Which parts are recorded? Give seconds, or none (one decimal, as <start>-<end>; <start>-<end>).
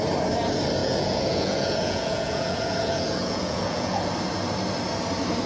0.0-0.8; 4.1-5.5